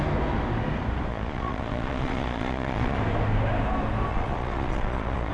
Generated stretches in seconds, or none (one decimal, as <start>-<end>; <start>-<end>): 1.1-3.0; 4.1-5.3